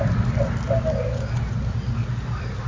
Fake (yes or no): no